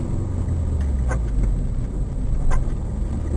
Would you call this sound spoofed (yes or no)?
no